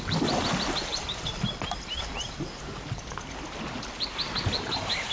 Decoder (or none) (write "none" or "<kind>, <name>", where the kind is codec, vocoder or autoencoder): none